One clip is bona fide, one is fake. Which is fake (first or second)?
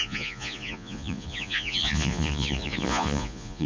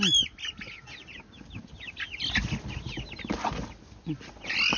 first